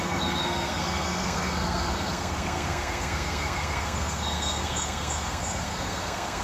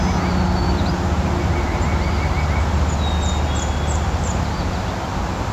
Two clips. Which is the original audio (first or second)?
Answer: second